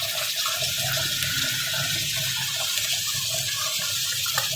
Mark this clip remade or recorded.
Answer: recorded